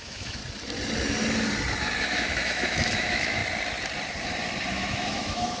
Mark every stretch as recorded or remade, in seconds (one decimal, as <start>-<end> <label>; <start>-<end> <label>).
0.0-0.4 remade; 0.4-2.0 recorded; 2.0-3.4 remade; 3.4-4.7 recorded; 4.7-5.6 remade